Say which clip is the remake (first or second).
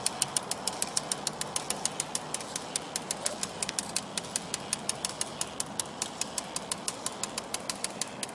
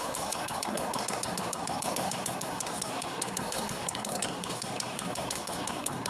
second